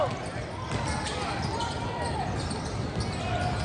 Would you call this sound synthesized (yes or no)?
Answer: no